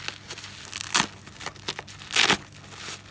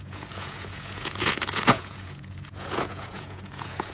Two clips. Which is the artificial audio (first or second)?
second